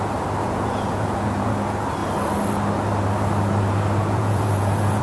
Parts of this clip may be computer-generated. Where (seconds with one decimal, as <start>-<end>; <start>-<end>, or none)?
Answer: 0.4-1.5; 4.0-5.0